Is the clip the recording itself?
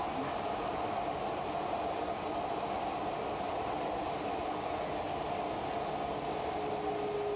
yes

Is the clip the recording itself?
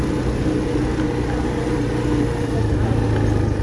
yes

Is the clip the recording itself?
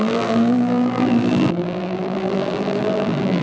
no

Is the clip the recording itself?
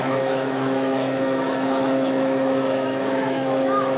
no